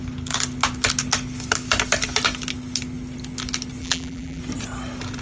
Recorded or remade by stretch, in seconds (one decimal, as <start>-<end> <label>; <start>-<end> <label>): 0.0-3.8 recorded; 3.8-4.4 remade; 4.4-5.2 recorded